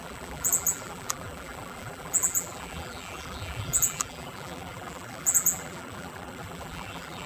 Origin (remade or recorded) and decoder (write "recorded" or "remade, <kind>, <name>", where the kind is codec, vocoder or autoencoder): remade, vocoder, BigVGAN v2